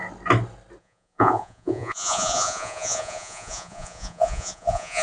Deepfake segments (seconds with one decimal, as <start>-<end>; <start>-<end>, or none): 0.8-5.0